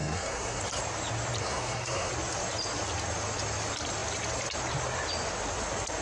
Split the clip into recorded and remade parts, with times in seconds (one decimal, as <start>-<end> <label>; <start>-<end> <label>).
0.0-0.6 remade; 0.6-1.4 recorded; 1.4-2.1 remade; 2.1-6.0 recorded